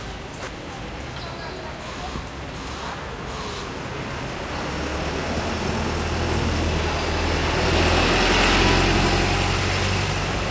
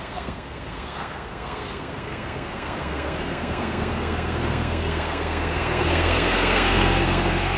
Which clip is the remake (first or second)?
second